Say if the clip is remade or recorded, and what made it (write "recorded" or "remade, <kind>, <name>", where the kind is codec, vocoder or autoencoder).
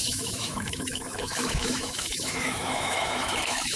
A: remade, autoencoder, DAC-VAE